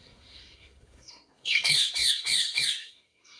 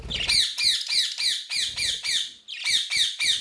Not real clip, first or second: first